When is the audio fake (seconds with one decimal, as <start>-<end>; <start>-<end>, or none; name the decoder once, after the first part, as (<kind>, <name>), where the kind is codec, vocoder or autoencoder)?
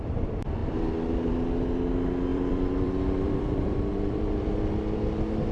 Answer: 2.3-4.5 (vocoder, BigVGAN v2)